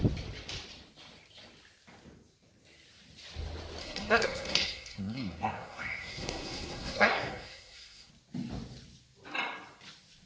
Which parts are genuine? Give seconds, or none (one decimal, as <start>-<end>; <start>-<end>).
0.0-3.8; 8.1-10.3